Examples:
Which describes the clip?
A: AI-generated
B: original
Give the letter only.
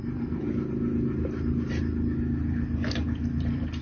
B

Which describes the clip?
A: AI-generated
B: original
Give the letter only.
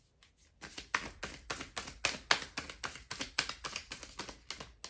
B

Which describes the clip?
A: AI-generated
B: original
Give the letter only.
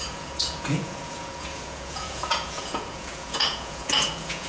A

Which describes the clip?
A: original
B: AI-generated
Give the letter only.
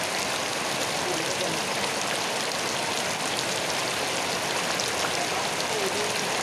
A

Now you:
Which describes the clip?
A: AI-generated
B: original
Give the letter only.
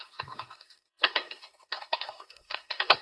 A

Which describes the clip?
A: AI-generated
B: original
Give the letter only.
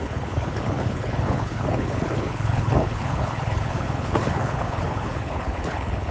A